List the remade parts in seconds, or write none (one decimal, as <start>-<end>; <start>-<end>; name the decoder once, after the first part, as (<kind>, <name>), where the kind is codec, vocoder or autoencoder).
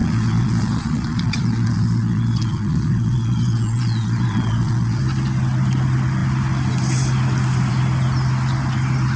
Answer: 0.0-5.0 (vocoder, Vocos)